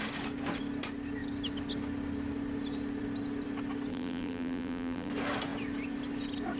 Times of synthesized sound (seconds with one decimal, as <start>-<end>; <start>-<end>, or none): 3.9-5.1